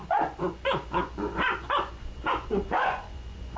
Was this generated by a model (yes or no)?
yes